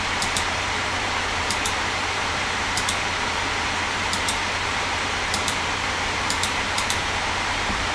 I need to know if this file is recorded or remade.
remade